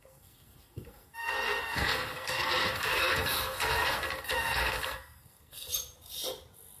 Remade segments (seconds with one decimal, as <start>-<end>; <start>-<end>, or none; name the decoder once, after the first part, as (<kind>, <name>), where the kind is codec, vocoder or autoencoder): 0.0-5.7 (codec, SNAC)